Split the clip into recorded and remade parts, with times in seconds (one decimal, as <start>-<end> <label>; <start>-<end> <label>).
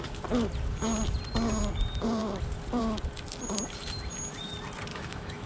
0.0-4.9 recorded; 4.9-5.5 remade